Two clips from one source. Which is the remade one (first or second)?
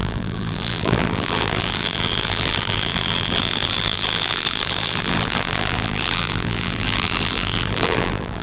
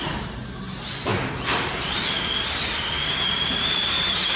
first